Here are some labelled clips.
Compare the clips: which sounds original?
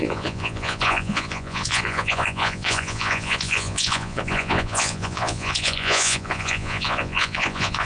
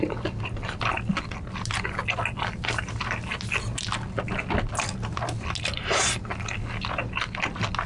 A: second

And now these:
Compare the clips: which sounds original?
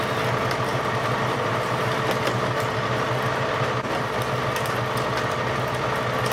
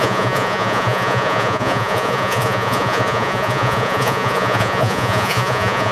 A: first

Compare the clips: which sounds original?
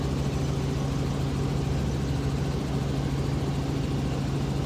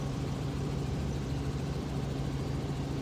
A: first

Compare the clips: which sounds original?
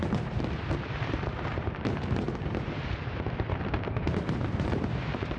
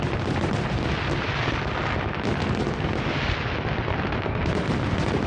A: second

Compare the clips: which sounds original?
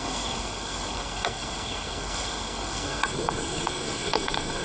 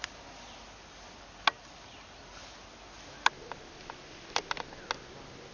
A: second